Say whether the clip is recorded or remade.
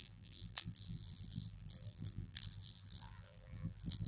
remade